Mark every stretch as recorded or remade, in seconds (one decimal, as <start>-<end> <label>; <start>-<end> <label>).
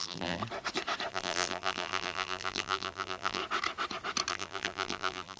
0.0-0.4 remade; 0.4-1.1 recorded; 1.1-3.4 remade; 3.4-4.3 recorded; 4.3-5.4 remade